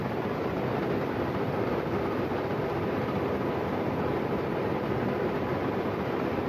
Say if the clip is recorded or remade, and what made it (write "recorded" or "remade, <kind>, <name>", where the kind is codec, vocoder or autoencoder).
remade, vocoder, BigVGAN v2